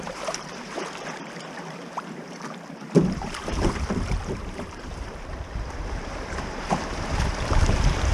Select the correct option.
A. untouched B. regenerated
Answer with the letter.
B